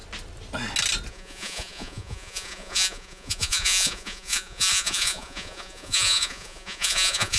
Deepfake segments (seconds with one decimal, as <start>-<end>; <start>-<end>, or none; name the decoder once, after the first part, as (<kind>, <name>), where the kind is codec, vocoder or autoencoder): 1.1-7.4 (vocoder, Vocos)